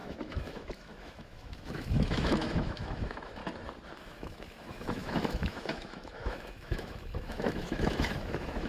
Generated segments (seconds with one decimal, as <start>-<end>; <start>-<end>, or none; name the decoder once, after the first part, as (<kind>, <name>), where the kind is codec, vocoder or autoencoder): 0.0-3.4 (autoencoder, DAC-VAE); 3.9-8.7